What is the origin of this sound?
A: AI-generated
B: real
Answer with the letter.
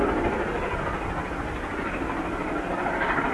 B